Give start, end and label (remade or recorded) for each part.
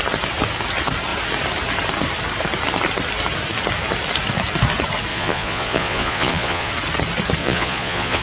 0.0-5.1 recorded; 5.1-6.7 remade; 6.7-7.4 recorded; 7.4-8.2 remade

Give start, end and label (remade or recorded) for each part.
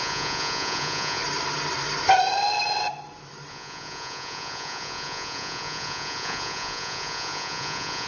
0.0-1.2 remade; 1.2-3.5 recorded; 3.5-8.1 remade